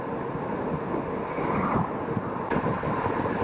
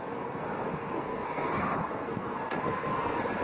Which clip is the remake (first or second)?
second